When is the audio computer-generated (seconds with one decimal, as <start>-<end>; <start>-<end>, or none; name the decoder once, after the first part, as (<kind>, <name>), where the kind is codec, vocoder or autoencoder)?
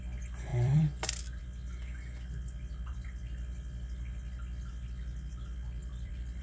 0.5-1.4 (vocoder, BigVGAN v2); 2.9-4.7; 5.8-6.4